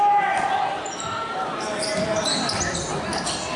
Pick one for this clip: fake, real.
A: real